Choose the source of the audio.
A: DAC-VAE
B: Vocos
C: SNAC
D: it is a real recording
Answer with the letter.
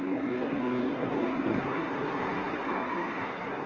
C